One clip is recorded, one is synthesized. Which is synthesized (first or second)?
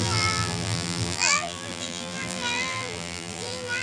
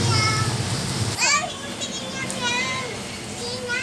first